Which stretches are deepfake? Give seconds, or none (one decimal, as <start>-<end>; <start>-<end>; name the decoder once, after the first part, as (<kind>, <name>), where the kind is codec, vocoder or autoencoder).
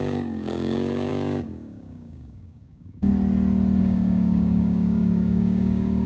0.0-3.1 (codec, DAC); 3.8-6.1